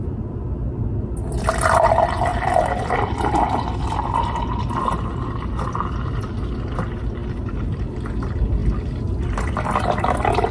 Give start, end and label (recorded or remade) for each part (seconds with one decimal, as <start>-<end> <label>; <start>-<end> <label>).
0.0-2.3 recorded; 2.3-4.4 remade; 4.4-7.2 recorded; 7.2-8.0 remade; 8.0-10.5 recorded